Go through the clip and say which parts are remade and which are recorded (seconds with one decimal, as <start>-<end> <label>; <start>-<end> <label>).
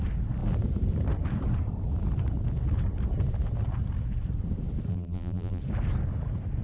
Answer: 0.0-4.9 recorded; 4.9-5.6 remade; 5.6-6.6 recorded